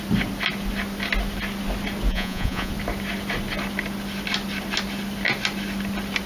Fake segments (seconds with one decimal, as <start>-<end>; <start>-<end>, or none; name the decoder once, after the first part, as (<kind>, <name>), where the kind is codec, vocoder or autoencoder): 2.1-2.7 (vocoder, Vocos)